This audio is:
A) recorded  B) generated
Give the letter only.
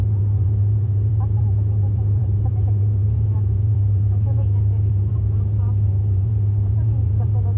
B